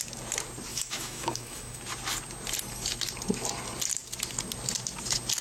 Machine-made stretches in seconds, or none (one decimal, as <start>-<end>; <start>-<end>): 0.7-1.8

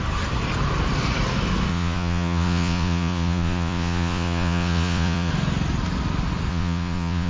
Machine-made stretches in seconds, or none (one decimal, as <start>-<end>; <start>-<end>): 1.7-5.3; 6.5-7.3